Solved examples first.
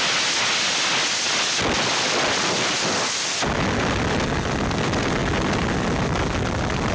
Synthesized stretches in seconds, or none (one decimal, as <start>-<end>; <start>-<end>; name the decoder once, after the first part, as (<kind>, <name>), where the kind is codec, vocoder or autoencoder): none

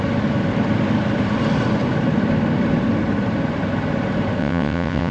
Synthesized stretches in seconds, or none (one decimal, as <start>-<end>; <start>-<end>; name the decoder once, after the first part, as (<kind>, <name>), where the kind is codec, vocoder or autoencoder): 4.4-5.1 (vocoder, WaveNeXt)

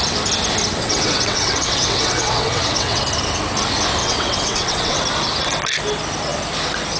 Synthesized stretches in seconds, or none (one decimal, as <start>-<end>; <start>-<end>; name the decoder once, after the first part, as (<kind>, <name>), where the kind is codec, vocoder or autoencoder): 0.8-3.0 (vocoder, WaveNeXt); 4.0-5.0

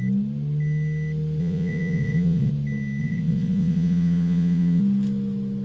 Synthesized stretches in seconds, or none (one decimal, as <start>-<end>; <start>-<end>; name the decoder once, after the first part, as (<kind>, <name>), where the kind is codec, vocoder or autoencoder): 1.4-2.5 (vocoder, Vocos); 3.0-4.8

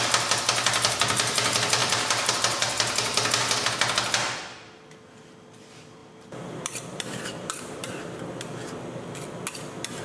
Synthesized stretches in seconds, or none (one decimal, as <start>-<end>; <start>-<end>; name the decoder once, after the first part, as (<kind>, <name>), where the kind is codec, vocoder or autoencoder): 1.8-2.3 (vocoder, BigVGAN v2); 6.0-7.9